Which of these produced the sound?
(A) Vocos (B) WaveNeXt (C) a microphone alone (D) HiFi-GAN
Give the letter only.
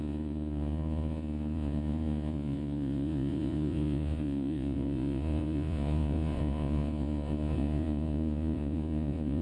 A